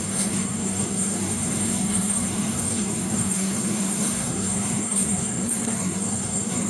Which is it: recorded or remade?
remade